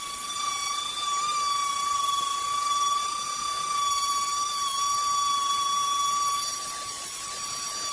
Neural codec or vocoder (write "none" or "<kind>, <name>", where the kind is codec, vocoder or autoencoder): none